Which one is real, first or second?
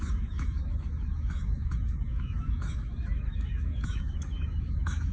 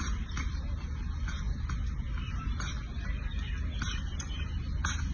second